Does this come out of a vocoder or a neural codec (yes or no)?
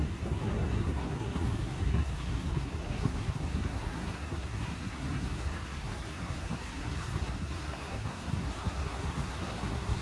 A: yes